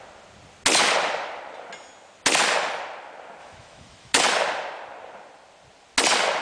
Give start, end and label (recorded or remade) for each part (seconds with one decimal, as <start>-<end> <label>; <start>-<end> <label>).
0.0-3.4 recorded; 3.4-4.2 remade; 4.2-6.4 recorded